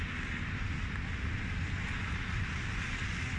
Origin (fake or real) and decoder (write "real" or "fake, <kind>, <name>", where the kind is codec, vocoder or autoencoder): real